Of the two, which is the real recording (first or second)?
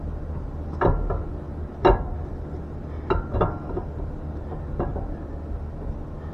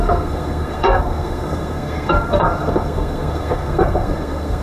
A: first